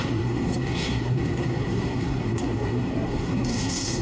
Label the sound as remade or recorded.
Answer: remade